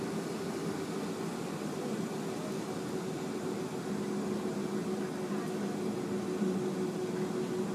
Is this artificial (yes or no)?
no